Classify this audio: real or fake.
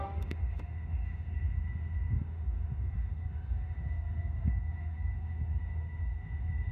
fake